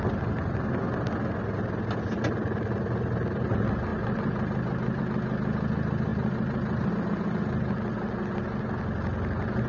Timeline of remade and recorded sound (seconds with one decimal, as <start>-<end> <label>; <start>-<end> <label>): 0.0-3.9 recorded; 3.9-5.0 remade; 5.0-6.1 recorded; 6.1-6.9 remade; 6.9-9.7 recorded